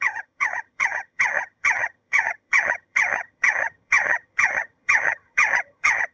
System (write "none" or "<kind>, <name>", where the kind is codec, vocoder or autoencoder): vocoder, HiFi-GAN